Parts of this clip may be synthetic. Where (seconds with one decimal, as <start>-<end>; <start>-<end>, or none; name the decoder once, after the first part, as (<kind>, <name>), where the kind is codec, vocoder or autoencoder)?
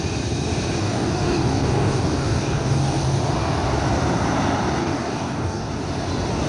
0.8-3.0 (codec, DAC); 4.8-5.7